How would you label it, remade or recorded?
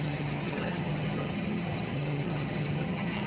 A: remade